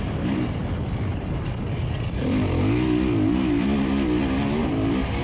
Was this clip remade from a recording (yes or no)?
no